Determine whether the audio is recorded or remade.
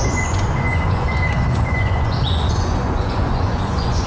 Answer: remade